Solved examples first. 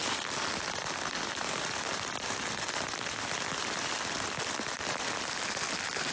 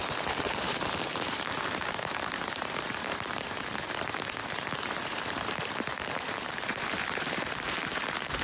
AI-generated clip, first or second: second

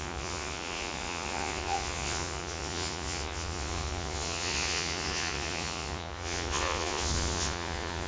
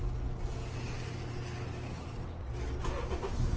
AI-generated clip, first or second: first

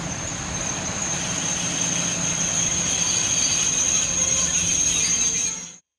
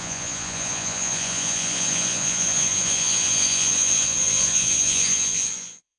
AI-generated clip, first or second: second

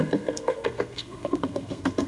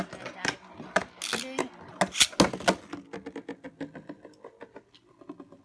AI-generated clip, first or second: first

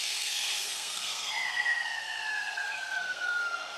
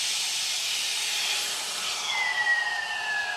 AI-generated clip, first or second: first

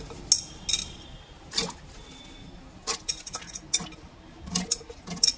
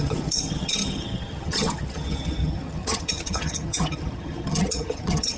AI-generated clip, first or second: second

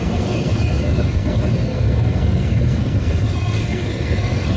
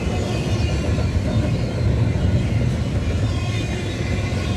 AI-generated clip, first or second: first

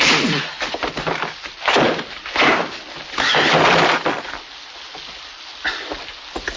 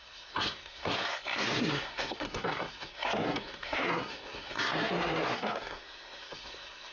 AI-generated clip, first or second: second